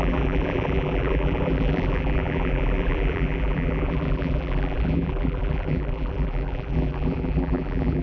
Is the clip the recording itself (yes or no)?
no